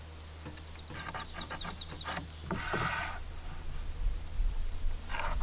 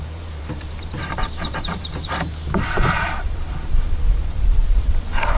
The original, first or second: first